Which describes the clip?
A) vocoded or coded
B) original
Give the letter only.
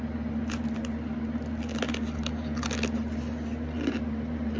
B